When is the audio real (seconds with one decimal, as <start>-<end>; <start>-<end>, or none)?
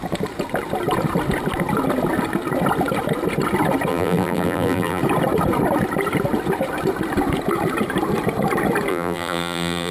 0.0-3.9; 5.0-8.9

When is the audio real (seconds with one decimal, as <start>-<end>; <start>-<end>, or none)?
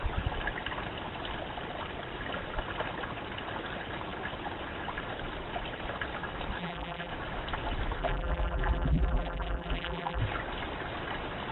0.0-6.6; 7.1-8.0; 10.2-11.5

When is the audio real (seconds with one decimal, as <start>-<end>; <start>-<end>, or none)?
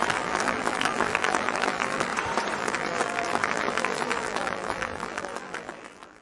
2.1-2.6